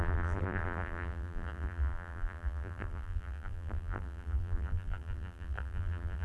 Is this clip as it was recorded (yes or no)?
no